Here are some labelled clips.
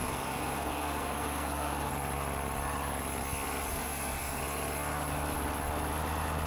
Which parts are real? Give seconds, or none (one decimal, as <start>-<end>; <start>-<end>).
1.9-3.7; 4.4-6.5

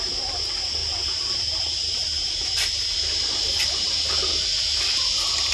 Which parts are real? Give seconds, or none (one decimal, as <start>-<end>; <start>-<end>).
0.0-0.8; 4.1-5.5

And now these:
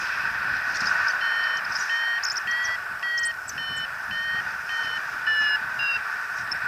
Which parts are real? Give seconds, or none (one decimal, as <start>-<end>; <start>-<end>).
0.0-5.9

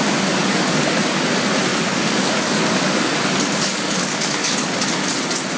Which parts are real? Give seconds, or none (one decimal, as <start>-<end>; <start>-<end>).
0.0-0.4; 1.0-1.7; 5.1-5.6

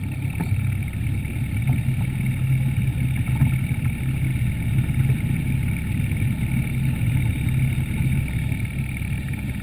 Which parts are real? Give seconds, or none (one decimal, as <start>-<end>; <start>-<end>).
0.0-9.6

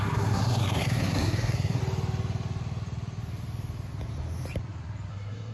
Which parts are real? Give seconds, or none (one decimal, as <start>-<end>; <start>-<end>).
1.8-5.1

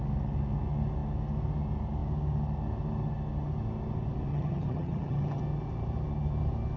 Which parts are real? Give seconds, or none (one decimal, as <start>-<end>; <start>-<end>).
0.0-4.3; 5.4-6.8

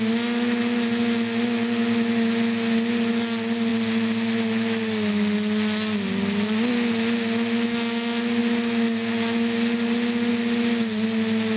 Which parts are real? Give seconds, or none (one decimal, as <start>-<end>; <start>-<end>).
0.0-11.6